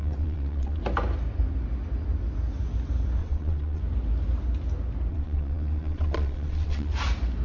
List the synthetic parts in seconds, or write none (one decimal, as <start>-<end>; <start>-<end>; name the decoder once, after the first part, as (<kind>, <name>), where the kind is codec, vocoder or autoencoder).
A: 0.0-0.8 (vocoder, WaveNeXt); 3.2-3.8; 5.1-6.9